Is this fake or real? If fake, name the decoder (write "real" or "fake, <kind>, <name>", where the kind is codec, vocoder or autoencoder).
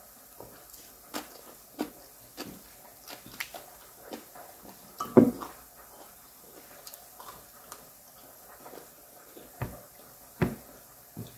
real